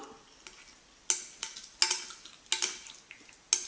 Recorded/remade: recorded